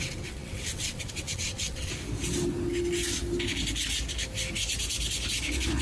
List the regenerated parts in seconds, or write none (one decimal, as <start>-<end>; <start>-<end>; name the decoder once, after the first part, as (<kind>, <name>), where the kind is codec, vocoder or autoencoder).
0.0-1.9 (vocoder, WaveNeXt)